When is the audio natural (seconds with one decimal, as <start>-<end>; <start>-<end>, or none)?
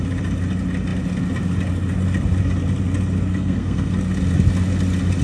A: 0.0-3.3; 3.9-5.2